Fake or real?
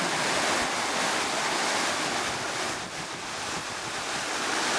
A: real